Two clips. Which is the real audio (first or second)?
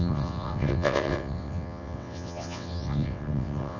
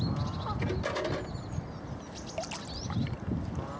second